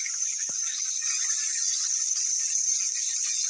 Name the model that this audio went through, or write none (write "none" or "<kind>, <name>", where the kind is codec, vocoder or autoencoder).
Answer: none